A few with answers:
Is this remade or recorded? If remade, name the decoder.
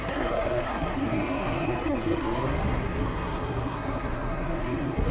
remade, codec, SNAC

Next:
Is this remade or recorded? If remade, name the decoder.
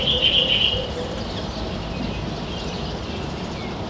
recorded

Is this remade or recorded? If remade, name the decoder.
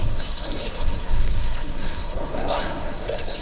remade, codec, SNAC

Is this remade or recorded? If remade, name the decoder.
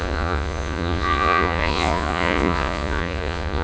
remade, vocoder, Vocos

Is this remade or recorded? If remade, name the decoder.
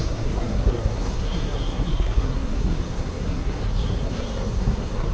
remade, codec, SNAC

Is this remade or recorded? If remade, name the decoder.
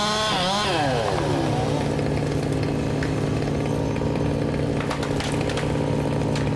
recorded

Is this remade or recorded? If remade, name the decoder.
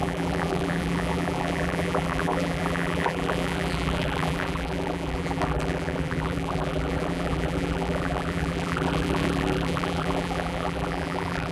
remade, vocoder, BigVGAN v2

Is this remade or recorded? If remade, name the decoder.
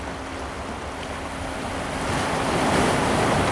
recorded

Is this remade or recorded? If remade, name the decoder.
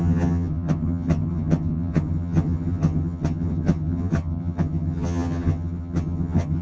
remade, vocoder, HiFi-GAN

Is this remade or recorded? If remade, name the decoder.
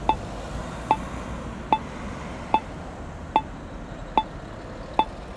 recorded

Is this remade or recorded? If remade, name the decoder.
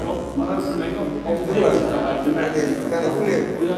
remade, vocoder, BigVGAN v2